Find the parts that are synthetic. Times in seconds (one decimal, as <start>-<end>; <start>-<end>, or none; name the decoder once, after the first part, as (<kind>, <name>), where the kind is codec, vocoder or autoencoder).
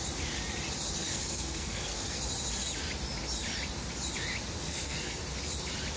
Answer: 1.0-2.2 (codec, SNAC); 4.6-5.2